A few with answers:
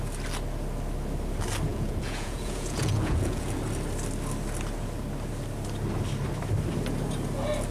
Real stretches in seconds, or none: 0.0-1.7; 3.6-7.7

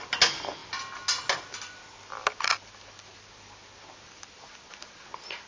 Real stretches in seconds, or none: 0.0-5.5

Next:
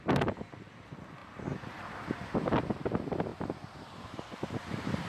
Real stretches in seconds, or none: 0.0-1.2; 2.5-3.3